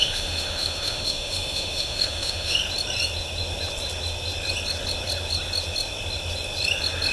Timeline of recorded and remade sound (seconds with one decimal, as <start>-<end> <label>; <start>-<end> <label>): 0.0-2.6 remade; 2.6-7.1 recorded